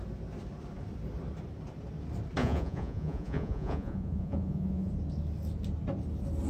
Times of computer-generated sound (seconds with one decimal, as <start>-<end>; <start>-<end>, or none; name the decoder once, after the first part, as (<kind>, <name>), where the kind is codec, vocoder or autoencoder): 2.4-4.9 (vocoder, Vocos)